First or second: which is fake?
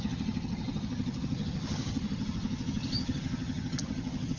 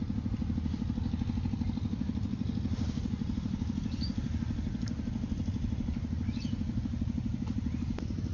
first